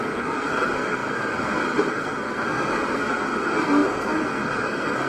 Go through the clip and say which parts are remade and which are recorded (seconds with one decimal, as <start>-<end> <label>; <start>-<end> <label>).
0.0-5.1 remade